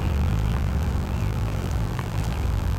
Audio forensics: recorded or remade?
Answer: remade